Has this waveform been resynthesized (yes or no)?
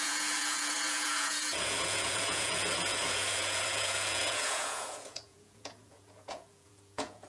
yes